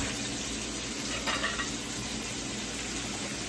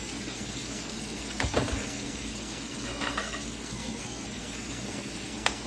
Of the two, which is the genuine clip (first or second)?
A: first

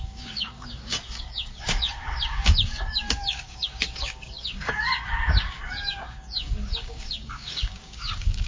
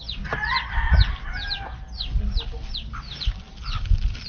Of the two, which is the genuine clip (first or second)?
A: second